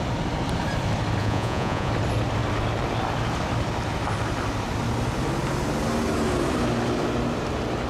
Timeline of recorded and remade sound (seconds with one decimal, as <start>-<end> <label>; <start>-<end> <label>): 0.0-1.2 recorded; 1.2-1.9 remade; 1.9-7.9 recorded